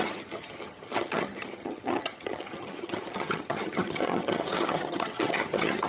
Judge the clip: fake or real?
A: fake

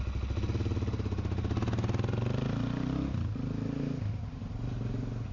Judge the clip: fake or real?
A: real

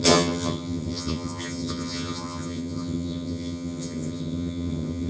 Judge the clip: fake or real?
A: fake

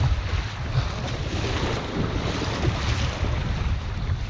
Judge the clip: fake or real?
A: real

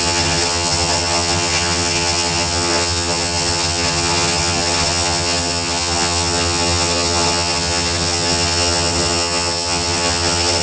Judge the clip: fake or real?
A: fake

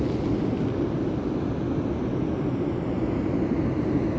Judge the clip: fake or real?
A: real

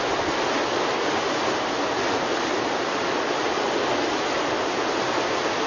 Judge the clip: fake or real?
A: real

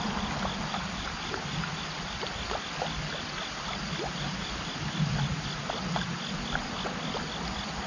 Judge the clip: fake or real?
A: real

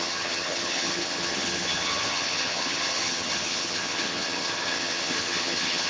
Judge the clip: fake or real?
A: fake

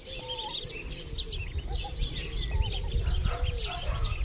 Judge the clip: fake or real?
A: real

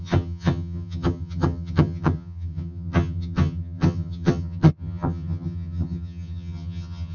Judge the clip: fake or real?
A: fake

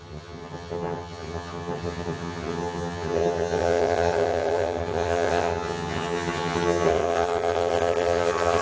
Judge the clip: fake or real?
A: fake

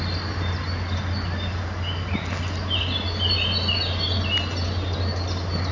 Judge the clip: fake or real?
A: real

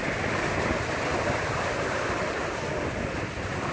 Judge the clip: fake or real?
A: real